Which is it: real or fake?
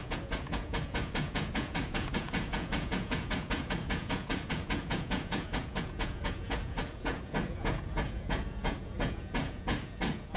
fake